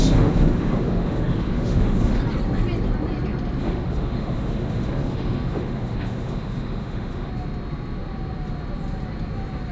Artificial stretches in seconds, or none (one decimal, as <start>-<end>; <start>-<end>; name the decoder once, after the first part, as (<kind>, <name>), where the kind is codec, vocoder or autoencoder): 0.0-2.2 (autoencoder, DAC-VAE); 3.6-7.3